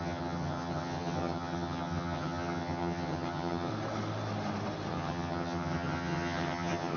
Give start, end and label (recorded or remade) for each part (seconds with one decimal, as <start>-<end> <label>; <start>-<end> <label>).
0.0-3.7 remade; 3.7-4.9 recorded; 4.9-7.0 remade